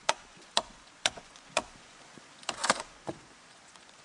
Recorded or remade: remade